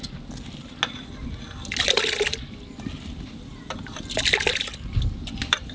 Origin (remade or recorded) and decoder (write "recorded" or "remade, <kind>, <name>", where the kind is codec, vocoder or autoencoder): recorded